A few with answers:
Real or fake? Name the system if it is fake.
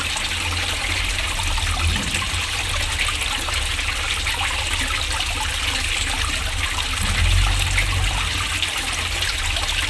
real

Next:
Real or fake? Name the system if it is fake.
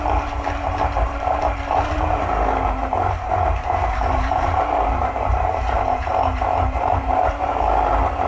fake, vocoder, BigVGAN v2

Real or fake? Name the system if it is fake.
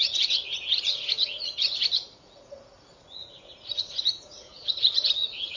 fake, vocoder, Vocos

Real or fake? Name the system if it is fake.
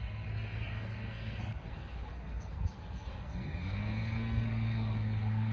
fake, codec, SNAC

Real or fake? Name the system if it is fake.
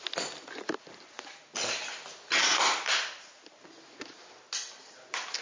real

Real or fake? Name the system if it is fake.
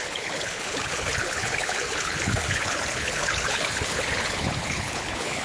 fake, codec, HILCodec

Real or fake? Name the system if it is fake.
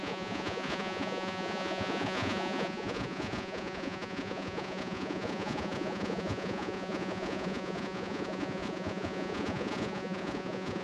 fake, vocoder, Vocos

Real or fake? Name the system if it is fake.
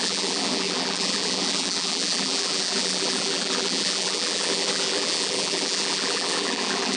fake, vocoder, BigVGAN v2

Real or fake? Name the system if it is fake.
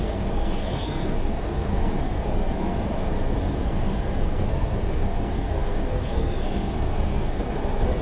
fake, codec, SNAC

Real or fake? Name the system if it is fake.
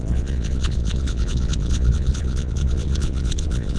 fake, vocoder, Vocos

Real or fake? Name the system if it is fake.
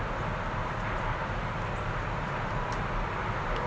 real